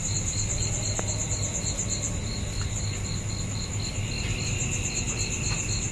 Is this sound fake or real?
real